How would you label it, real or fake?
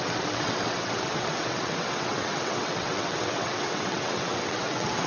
fake